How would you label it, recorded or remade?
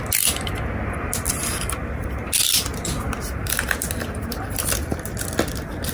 recorded